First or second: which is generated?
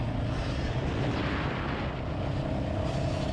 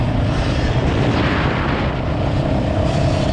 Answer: second